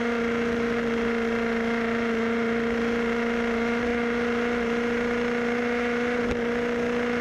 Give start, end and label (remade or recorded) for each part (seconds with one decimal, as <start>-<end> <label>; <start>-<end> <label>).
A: 0.0-7.2 recorded